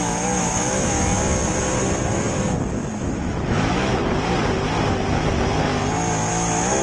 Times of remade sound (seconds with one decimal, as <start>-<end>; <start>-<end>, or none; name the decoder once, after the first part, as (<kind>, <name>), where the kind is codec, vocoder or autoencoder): 0.0-1.1 (autoencoder, DAC-VAE); 3.0-3.9; 6.3-6.8